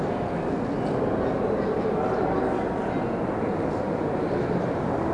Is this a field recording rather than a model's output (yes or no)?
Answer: yes